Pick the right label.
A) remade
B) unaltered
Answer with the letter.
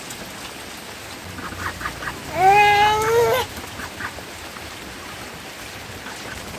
B